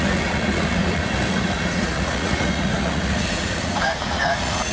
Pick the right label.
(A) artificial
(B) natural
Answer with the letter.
A